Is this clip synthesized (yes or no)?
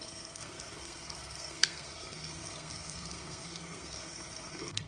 yes